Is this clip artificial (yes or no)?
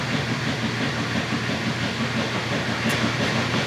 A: no